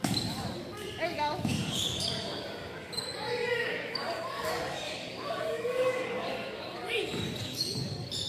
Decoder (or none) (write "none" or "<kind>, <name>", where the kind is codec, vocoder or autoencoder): codec, DAC